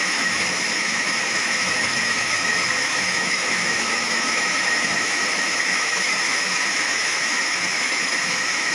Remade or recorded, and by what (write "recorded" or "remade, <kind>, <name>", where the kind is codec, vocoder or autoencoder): remade, autoencoder, DAC-VAE